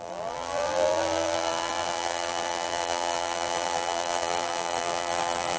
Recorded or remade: remade